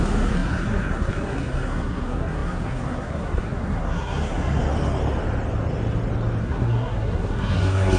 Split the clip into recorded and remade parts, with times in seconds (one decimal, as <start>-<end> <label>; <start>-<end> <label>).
0.0-4.6 remade; 4.6-6.4 recorded; 6.4-8.0 remade